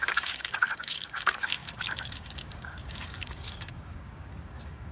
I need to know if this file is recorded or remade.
remade